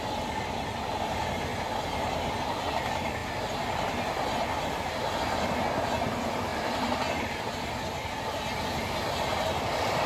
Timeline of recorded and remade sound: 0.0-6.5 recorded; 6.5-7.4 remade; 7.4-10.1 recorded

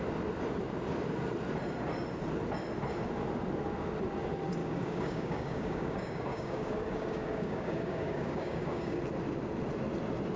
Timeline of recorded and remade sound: 0.0-4.6 recorded; 4.6-9.0 remade; 9.0-10.4 recorded

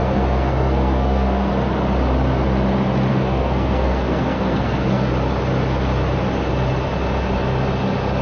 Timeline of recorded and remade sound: 0.0-1.5 remade; 1.5-3.1 recorded; 3.1-5.1 remade; 5.1-8.2 recorded

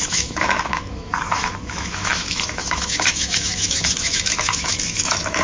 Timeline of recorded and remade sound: 0.0-5.4 remade

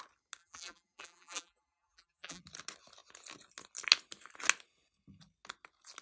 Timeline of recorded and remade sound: 0.0-0.4 recorded; 0.4-2.4 remade; 2.4-6.0 recorded

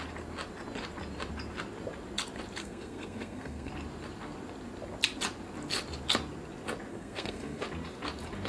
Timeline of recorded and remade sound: 0.0-2.6 recorded; 2.6-3.7 remade; 3.7-6.9 recorded; 6.9-7.6 remade; 7.6-8.5 recorded